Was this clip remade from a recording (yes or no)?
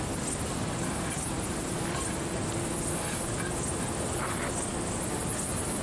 no